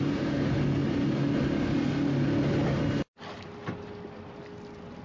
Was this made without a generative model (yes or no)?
yes